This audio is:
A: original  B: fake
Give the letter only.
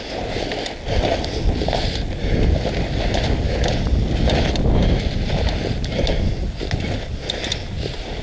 A